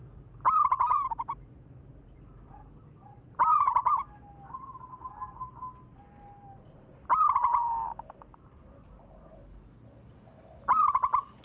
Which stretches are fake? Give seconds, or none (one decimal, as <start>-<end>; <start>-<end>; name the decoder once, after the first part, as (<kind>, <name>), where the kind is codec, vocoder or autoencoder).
0.0-1.9 (vocoder, BigVGAN v2); 5.9-9.3